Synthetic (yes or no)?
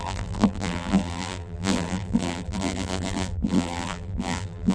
yes